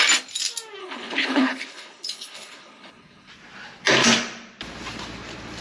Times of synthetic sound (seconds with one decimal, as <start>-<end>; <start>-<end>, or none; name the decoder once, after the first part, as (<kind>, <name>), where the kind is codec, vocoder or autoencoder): 0.8-3.3 (codec, HILCodec)